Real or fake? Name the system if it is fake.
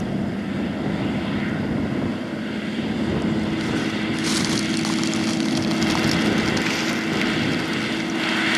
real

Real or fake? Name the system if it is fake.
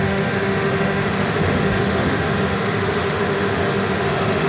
fake, autoencoder, DAC-VAE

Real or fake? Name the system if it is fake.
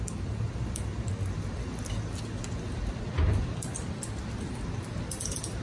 real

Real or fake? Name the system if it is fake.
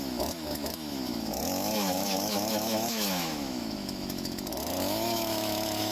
fake, autoencoder, DAC-VAE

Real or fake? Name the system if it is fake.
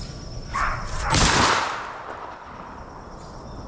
real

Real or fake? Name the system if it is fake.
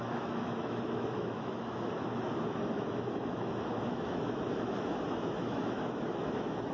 fake, autoencoder, DAC-VAE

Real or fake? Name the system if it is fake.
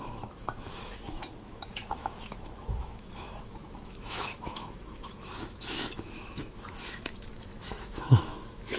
fake, autoencoder, DAC-VAE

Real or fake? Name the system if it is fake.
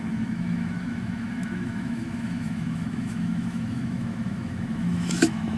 fake, autoencoder, DAC-VAE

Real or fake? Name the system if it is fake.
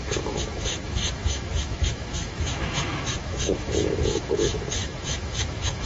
fake, autoencoder, DAC-VAE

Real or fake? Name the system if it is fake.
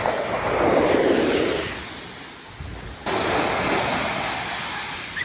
real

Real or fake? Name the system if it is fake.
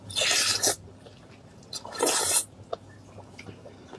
real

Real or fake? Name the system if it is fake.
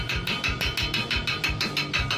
real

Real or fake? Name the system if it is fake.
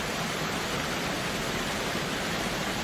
real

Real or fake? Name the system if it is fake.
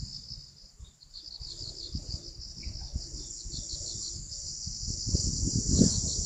real